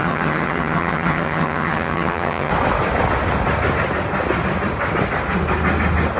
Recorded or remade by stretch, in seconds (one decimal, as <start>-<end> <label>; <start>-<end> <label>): 0.0-2.5 remade; 2.5-6.2 recorded